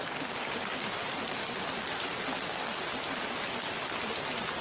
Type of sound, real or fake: real